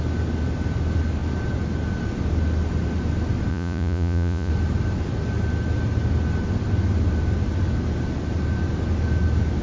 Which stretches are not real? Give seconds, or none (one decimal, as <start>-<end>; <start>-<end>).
3.5-4.5